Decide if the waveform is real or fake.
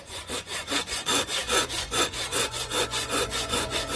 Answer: fake